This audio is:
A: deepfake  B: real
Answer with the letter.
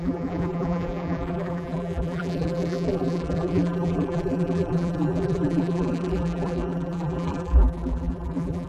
A